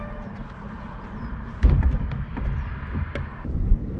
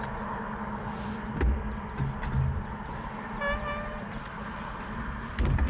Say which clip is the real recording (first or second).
second